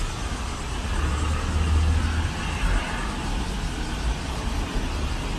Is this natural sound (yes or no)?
yes